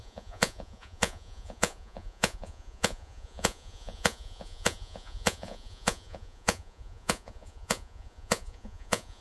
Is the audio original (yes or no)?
no